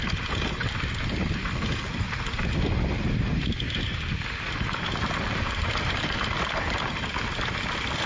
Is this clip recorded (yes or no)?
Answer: yes